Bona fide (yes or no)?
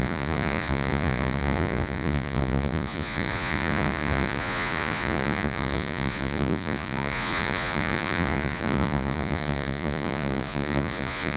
no